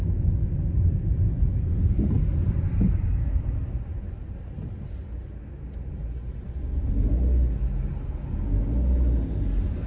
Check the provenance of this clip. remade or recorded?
recorded